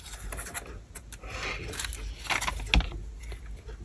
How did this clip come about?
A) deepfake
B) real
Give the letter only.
B